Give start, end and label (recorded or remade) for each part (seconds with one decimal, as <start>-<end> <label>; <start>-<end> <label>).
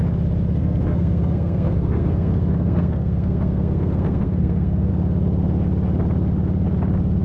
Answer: 0.0-0.6 recorded; 0.6-4.9 remade; 4.9-7.2 recorded